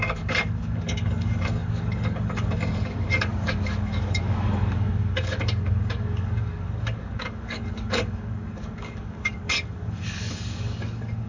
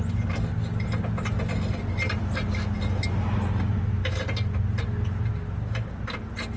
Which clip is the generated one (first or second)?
first